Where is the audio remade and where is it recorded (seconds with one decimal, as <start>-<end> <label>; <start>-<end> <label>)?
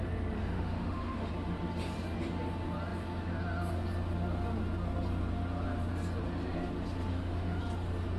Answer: 0.0-0.4 recorded; 0.4-1.3 remade; 1.3-7.1 recorded; 7.1-7.6 remade; 7.6-8.2 recorded